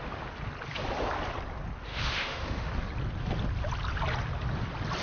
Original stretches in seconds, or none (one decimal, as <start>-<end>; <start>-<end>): 0.0-1.9; 2.7-5.0

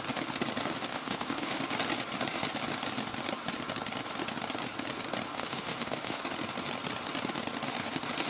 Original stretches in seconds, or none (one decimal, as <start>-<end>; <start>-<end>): 0.0-0.9; 1.6-5.3; 6.2-8.3

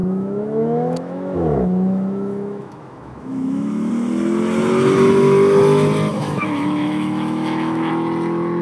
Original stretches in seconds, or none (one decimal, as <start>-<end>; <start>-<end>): 3.9-6.1; 7.9-8.6

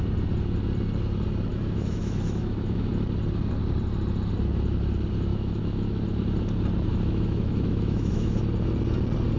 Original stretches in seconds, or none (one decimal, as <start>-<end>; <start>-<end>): 0.0-1.5; 2.9-5.3; 6.0-6.9; 8.4-9.4

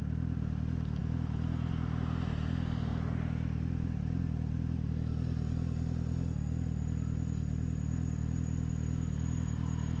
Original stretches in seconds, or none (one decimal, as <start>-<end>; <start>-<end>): 0.0-1.0; 1.7-10.0

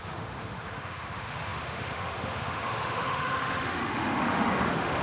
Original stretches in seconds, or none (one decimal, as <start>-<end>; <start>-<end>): none